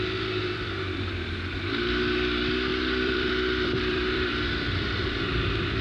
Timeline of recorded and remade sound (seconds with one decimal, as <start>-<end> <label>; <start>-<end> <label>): 0.0-0.4 recorded; 0.4-1.5 remade; 1.5-2.7 recorded; 2.7-5.3 remade; 5.3-5.8 recorded